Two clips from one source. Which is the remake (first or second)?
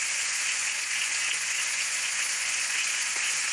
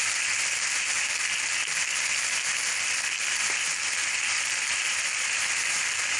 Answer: first